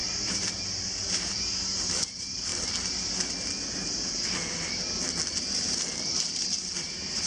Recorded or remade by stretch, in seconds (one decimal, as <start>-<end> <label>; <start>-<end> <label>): 0.0-2.5 remade; 2.5-5.4 recorded; 5.4-7.3 remade